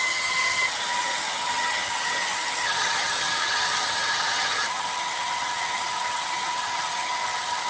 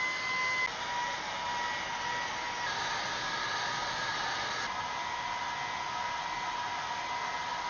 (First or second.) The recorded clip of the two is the second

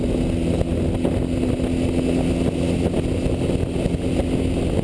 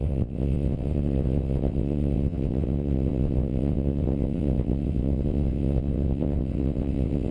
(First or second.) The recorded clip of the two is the first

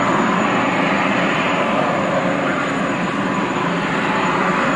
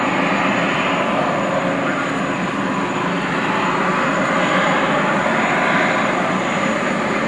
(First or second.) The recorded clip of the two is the second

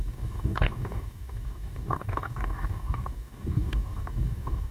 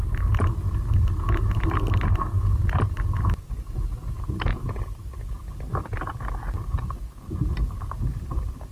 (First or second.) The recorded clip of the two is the second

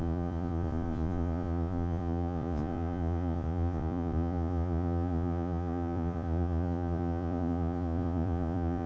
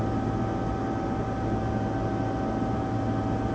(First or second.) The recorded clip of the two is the second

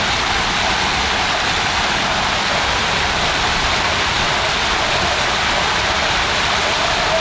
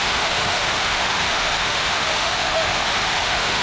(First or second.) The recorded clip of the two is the first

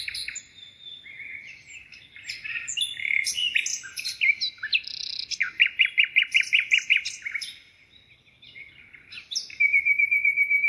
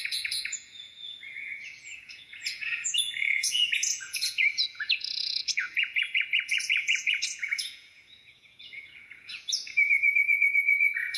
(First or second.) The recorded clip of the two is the first